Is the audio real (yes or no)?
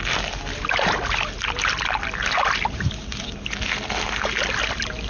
yes